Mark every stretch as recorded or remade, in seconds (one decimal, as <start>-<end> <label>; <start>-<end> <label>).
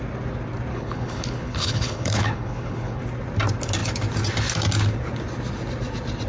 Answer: 0.0-0.7 recorded; 0.7-3.0 remade; 3.0-6.3 recorded